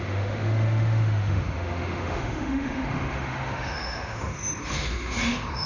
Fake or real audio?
fake